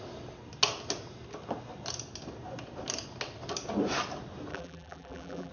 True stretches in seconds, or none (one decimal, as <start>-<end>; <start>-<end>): 0.0-4.5